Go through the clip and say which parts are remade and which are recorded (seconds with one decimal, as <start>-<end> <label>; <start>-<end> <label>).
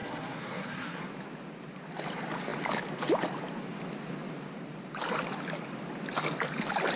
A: 0.0-1.0 remade; 1.0-7.0 recorded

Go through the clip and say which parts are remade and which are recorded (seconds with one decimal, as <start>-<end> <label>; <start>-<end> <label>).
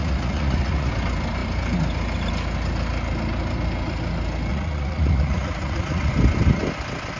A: 0.0-0.9 remade; 0.9-4.5 recorded; 4.5-6.1 remade; 6.1-7.2 recorded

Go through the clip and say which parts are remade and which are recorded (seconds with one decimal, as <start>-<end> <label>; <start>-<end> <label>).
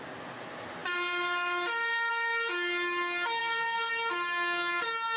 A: 0.0-3.4 recorded; 3.4-3.9 remade; 3.9-5.2 recorded